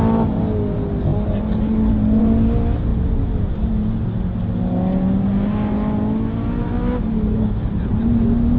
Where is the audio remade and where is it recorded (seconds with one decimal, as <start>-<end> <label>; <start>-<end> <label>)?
0.0-8.6 recorded